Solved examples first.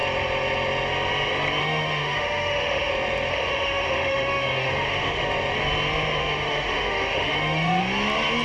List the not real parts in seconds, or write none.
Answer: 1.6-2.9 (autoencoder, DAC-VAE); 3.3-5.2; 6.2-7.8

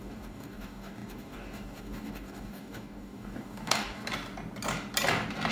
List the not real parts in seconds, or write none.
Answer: 0.0-4.0 (codec, DAC)

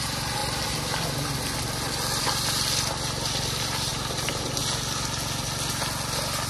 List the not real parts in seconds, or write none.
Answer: 3.9-4.6 (vocoder, BigVGAN v2)

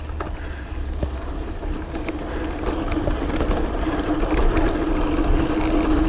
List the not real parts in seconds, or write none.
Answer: none

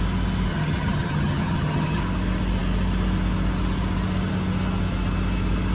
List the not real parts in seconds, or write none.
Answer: 0.5-2.0 (vocoder, HiFi-GAN)

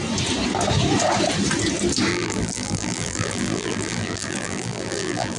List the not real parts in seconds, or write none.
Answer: 2.1-5.4 (vocoder, BigVGAN v2)

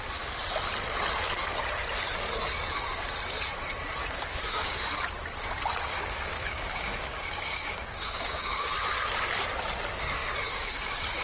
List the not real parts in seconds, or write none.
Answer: 4.0-4.8 (codec, DAC); 5.9-8.7

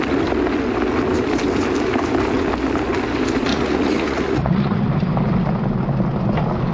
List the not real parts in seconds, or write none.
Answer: 3.5-4.8 (vocoder, Vocos)